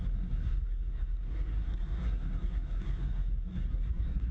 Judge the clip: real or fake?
fake